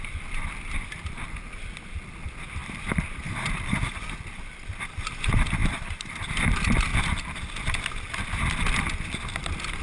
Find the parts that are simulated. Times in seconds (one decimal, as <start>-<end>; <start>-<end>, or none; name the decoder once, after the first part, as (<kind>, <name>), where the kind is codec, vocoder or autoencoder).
2.6-4.8 (vocoder, BigVGAN v2); 5.6-6.4